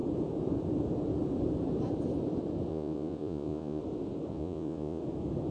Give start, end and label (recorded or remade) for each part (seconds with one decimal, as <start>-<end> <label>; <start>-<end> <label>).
0.0-2.7 recorded; 2.7-3.8 remade; 3.8-4.3 recorded; 4.3-5.0 remade; 5.0-5.5 recorded